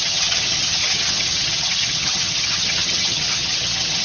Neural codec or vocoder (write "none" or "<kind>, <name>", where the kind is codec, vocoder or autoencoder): vocoder, HiFi-GAN